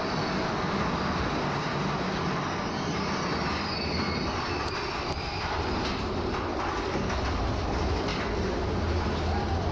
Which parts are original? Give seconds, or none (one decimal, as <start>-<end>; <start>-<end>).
0.0-9.7